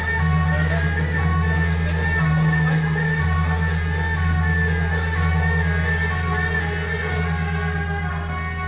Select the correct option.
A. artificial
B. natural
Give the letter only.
B